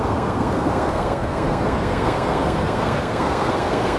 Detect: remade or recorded remade